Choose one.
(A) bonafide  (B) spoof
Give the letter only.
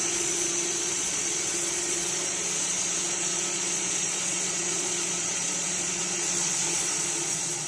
B